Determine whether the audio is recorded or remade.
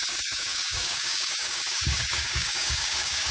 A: remade